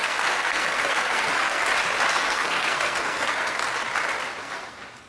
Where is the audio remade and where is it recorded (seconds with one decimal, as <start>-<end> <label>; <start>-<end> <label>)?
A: 0.0-1.6 remade; 1.6-2.1 recorded; 2.1-3.6 remade; 3.6-4.4 recorded; 4.4-5.1 remade